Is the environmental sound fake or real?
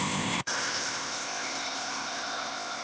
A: fake